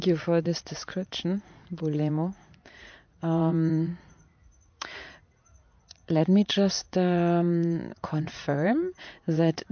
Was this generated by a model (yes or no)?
yes